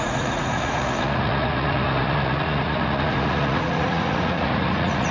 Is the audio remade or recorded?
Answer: remade